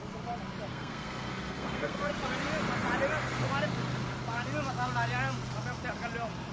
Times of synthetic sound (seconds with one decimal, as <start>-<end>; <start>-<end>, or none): 0.7-2.1